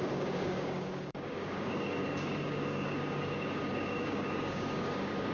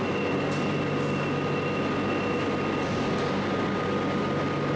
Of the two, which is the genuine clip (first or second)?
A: second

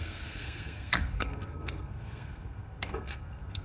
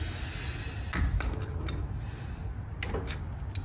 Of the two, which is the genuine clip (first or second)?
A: second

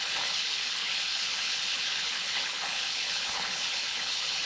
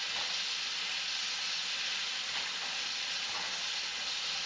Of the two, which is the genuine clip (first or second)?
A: second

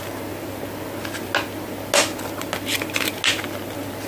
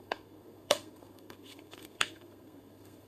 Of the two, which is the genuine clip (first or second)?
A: first